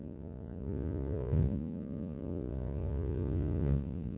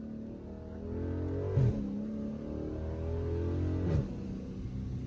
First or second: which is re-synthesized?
first